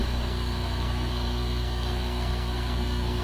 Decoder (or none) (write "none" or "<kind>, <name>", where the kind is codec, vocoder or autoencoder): codec, SNAC